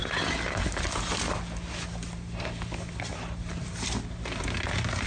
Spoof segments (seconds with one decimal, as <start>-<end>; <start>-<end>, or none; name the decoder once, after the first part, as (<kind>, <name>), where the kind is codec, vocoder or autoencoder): none